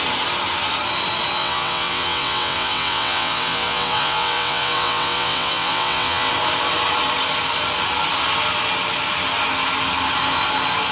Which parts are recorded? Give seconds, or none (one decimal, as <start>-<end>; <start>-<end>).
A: 0.0-1.4; 6.3-10.9